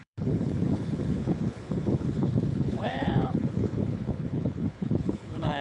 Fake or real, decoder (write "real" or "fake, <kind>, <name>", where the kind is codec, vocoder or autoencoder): fake, codec, HILCodec